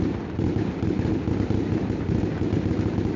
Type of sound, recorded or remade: recorded